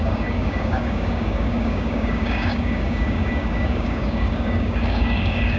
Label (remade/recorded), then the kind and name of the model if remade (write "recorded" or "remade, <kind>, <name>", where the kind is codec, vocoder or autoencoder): remade, codec, DAC